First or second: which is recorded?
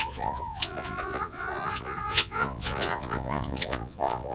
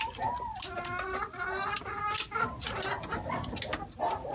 second